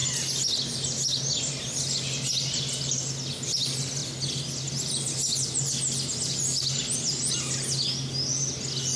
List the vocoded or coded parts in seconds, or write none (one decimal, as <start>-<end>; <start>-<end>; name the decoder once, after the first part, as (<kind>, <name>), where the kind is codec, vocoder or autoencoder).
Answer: none